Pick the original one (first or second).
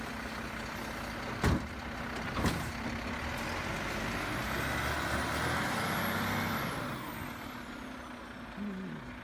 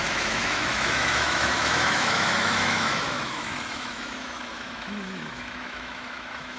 first